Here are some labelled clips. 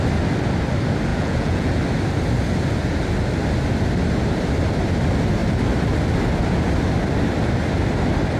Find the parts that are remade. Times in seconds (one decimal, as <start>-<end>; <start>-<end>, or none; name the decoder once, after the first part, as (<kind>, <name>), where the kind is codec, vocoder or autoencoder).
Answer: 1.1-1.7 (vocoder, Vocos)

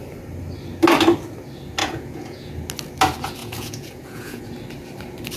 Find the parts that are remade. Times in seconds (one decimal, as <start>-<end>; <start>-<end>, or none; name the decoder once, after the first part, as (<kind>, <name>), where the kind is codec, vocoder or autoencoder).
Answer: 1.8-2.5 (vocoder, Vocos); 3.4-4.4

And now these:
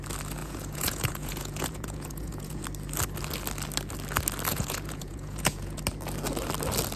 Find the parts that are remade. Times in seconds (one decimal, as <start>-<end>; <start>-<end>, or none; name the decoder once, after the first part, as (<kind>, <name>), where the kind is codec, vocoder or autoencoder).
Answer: 0.4-2.6 (vocoder, Vocos); 4.5-5.8

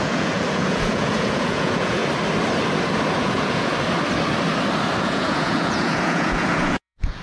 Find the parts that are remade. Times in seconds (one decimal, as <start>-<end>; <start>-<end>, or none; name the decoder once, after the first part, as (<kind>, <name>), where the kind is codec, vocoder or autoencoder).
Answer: 0.0-2.0 (vocoder, Vocos); 3.2-3.7; 5.0-7.2

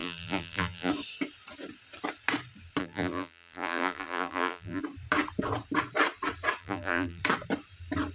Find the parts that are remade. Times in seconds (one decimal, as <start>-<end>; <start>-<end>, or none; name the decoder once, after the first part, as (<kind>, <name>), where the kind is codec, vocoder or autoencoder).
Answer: 0.0-0.9 (vocoder, BigVGAN v2); 2.8-4.8; 6.6-7.2

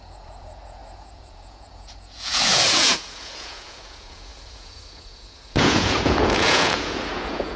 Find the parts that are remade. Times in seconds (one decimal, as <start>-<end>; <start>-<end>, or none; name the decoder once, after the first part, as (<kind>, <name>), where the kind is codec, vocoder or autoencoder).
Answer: 0.0-7.6 (vocoder, Vocos)

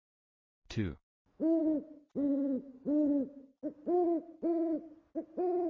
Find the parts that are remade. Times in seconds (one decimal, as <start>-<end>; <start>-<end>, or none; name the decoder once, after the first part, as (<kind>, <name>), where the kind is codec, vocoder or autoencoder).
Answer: 1.0-1.6 (autoencoder, DAC-VAE)

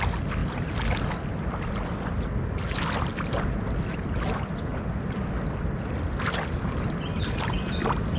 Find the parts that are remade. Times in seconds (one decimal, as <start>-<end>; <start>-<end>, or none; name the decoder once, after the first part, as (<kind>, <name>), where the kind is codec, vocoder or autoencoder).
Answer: none